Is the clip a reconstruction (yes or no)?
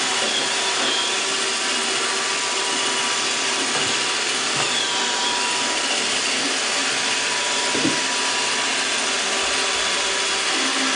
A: no